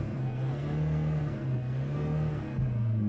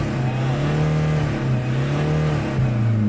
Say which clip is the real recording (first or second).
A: second